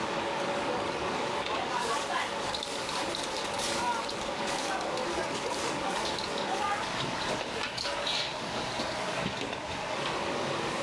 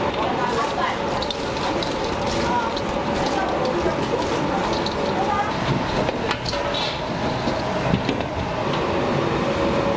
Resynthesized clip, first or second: first